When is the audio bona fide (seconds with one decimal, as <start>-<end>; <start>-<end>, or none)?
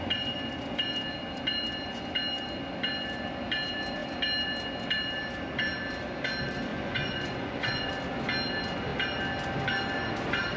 0.0-6.7; 7.9-10.6